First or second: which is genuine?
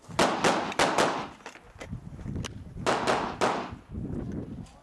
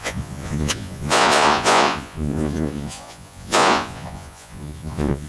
first